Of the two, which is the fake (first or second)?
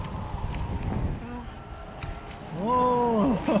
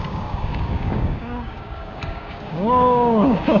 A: second